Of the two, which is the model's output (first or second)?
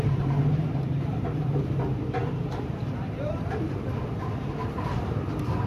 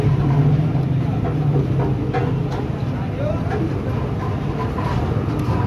first